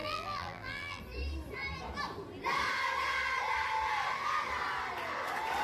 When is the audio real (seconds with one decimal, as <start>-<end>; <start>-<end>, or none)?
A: 1.0-5.6